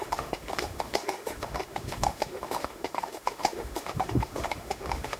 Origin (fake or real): fake